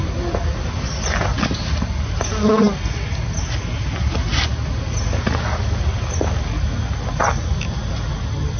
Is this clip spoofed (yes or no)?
no